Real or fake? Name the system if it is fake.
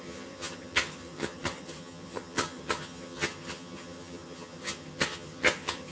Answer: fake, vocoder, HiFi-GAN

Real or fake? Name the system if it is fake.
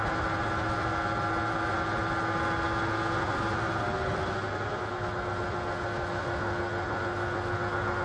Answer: real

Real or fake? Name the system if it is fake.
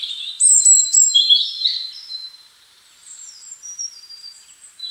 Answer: fake, vocoder, BigVGAN v2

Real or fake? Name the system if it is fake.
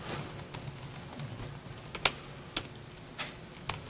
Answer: real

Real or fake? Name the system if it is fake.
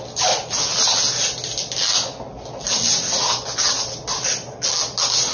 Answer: real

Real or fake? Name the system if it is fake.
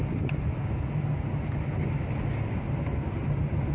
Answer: real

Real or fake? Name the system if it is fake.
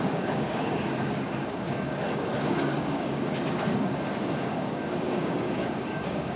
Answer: fake, codec, DAC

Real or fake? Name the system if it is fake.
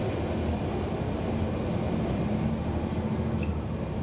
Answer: real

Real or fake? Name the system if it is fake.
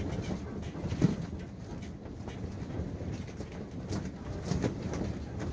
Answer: real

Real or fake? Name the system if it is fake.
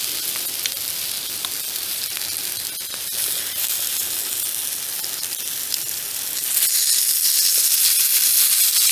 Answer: real